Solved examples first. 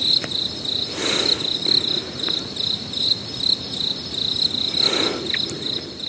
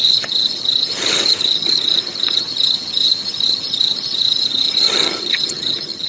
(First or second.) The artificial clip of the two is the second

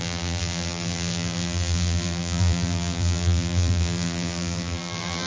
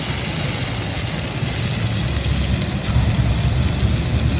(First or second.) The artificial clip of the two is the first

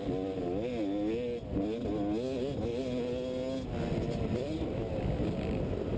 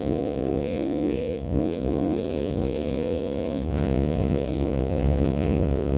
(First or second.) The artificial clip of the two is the second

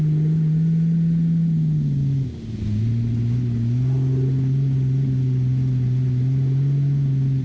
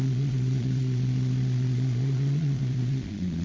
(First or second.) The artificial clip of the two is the second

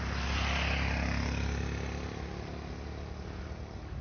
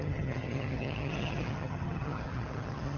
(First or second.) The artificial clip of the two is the second